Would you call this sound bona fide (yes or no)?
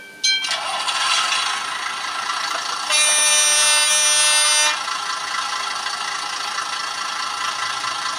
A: yes